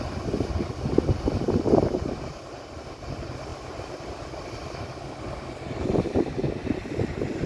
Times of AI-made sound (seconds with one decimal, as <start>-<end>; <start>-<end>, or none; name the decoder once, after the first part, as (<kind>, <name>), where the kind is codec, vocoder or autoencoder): none